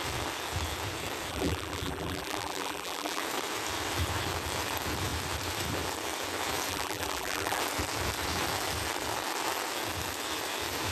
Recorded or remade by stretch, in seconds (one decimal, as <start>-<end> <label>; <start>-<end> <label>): 0.0-1.3 recorded; 1.3-3.2 remade; 3.2-6.7 recorded; 6.7-7.6 remade; 7.6-10.9 recorded